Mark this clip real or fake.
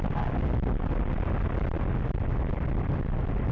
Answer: real